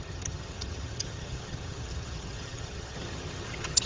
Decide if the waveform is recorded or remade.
remade